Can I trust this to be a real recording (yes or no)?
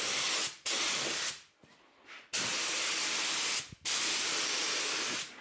yes